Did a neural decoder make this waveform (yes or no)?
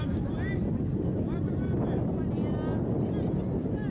no